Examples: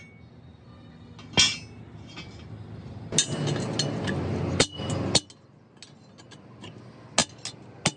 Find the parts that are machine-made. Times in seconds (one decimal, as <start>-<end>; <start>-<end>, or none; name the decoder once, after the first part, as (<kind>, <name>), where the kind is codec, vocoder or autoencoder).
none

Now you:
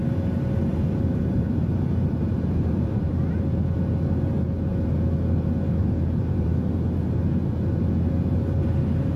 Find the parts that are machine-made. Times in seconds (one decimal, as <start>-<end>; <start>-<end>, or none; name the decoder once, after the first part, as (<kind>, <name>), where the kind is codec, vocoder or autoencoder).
0.7-3.1 (vocoder, BigVGAN v2); 5.8-6.5

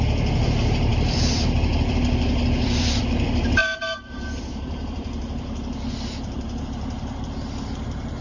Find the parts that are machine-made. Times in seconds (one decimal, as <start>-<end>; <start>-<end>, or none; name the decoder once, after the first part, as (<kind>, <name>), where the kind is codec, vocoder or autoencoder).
0.9-3.0 (vocoder, BigVGAN v2); 3.6-6.6